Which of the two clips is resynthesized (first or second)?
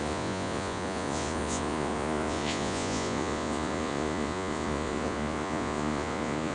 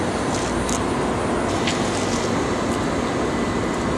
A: first